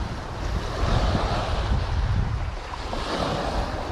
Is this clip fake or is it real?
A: real